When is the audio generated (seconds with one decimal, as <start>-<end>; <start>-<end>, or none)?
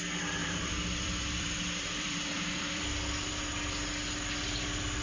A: 0.4-3.3